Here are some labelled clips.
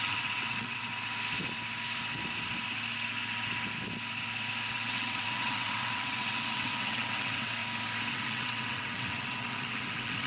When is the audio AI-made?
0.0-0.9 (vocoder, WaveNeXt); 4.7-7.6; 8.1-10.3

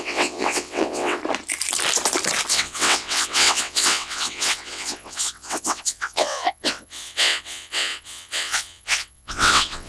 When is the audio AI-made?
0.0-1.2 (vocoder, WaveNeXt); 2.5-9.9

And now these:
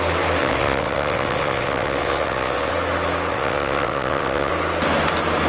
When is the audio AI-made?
0.4-2.7 (vocoder, WaveNeXt); 3.3-4.5